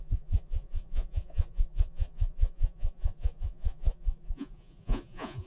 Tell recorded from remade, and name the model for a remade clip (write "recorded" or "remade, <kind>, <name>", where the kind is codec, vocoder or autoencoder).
remade, vocoder, Vocos